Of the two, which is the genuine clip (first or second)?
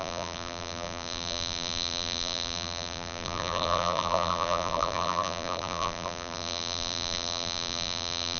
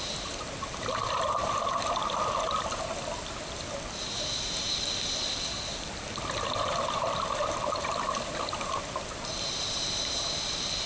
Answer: second